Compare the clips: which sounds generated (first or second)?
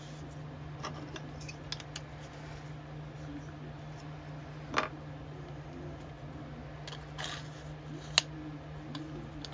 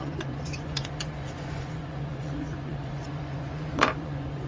second